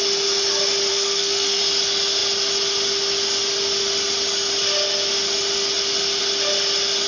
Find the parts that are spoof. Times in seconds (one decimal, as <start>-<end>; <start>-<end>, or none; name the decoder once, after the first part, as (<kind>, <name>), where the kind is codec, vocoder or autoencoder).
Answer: 0.9-1.6 (codec, SNAC)